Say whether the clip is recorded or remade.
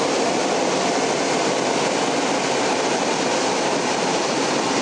recorded